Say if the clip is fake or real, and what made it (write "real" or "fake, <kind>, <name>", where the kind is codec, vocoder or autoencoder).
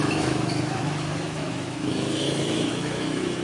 fake, autoencoder, DAC-VAE